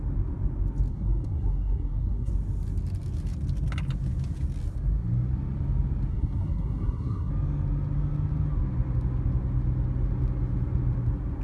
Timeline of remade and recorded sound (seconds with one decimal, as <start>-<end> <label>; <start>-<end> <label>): 0.0-0.9 recorded; 0.9-2.3 remade; 2.3-6.1 recorded; 6.1-7.3 remade; 7.3-11.4 recorded